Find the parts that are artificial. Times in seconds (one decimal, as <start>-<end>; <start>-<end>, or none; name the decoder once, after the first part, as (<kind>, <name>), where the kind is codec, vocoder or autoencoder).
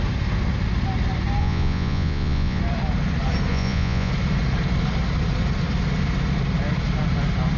1.4-2.6 (vocoder, Vocos); 3.5-4.1